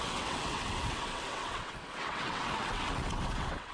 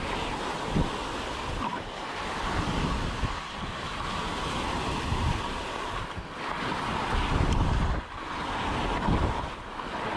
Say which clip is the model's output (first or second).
first